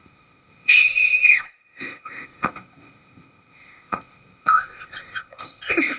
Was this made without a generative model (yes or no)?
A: no